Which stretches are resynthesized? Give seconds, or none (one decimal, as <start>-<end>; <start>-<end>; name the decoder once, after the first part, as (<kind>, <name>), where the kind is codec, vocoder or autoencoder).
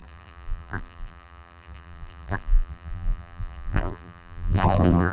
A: 0.0-5.1 (vocoder, BigVGAN v2)